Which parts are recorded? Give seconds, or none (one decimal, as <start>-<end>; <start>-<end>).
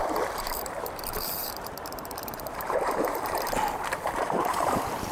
none